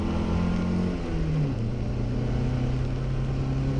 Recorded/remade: recorded